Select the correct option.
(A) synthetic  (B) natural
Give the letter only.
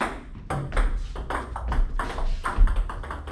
B